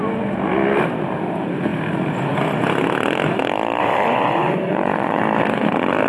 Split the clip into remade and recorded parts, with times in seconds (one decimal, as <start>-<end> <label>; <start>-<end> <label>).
0.0-3.8 recorded; 3.8-5.2 remade; 5.2-6.1 recorded